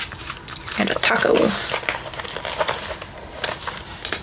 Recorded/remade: recorded